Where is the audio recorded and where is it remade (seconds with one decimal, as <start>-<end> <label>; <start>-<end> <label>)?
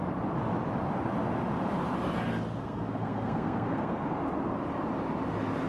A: 0.0-2.6 recorded; 2.6-4.0 remade; 4.0-5.7 recorded